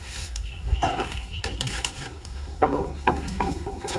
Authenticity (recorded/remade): remade